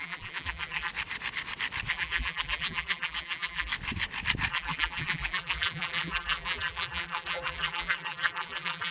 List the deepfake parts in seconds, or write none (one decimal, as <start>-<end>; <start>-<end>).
0.0-0.9; 1.9-3.7; 4.5-8.9